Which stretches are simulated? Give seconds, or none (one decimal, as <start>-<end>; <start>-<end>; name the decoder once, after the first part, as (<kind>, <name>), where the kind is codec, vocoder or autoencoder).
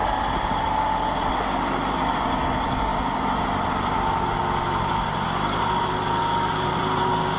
none